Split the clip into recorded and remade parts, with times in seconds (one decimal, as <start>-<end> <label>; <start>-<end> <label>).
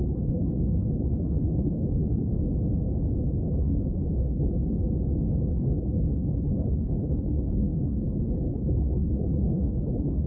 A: 0.0-2.3 remade; 2.3-3.3 recorded; 3.3-4.6 remade; 4.6-5.5 recorded; 5.5-10.3 remade